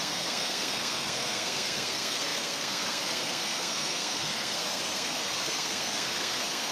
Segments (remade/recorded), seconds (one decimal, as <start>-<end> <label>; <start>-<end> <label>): 0.0-6.7 remade